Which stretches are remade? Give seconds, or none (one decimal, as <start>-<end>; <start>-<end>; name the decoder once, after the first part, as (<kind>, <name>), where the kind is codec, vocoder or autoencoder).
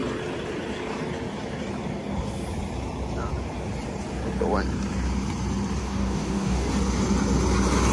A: 5.8-6.7 (codec, DAC)